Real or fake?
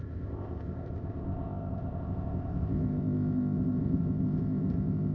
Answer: fake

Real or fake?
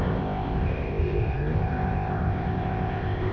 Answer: fake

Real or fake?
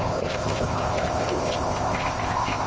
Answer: fake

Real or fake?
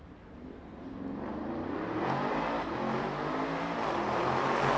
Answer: real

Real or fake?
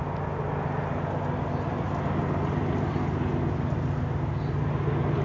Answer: real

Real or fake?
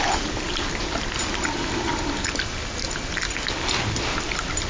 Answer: real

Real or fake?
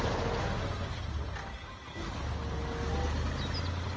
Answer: real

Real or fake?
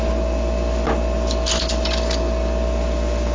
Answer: real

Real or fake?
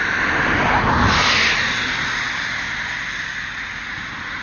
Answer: real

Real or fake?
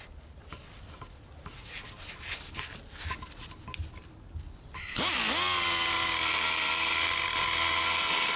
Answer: real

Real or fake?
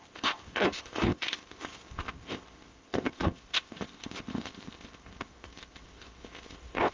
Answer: fake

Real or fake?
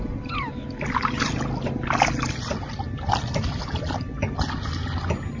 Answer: real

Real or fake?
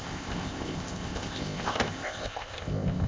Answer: fake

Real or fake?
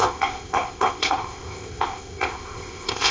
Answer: fake